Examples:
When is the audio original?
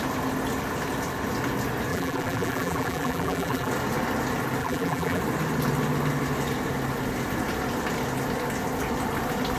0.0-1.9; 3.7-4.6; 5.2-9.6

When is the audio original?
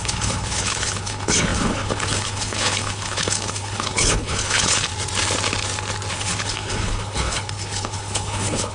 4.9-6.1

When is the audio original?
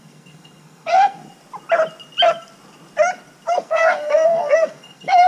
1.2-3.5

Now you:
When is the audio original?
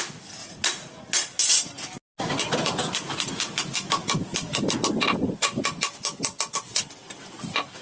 0.0-0.4; 1.0-7.8